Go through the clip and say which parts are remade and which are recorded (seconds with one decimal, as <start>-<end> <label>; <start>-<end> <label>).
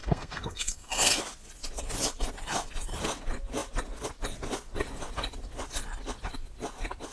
0.0-1.2 remade; 1.2-7.1 recorded